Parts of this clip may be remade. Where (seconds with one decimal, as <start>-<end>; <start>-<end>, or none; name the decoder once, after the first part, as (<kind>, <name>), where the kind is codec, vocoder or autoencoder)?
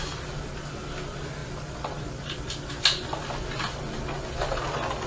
none